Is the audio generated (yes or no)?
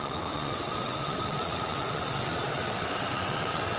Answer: yes